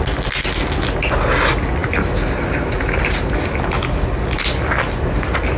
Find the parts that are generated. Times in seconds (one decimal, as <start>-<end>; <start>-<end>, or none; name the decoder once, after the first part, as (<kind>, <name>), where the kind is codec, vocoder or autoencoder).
none